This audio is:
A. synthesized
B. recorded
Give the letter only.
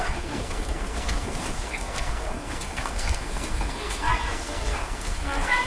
A